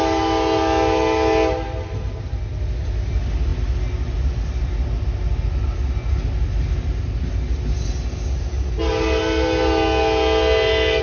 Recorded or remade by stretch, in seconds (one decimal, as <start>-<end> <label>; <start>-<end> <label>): 0.0-11.0 recorded